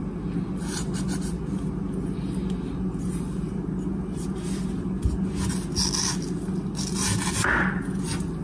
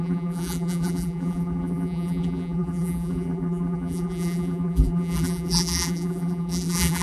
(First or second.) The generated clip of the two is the second